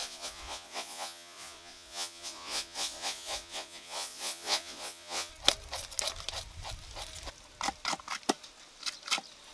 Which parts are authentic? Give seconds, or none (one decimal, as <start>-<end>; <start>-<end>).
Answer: 5.3-9.5